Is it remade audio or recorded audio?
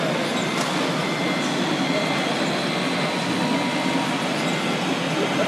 recorded